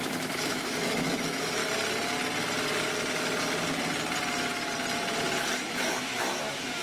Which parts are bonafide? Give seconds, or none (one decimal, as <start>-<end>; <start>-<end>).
1.6-5.7